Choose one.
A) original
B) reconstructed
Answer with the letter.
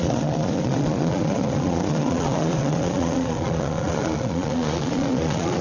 B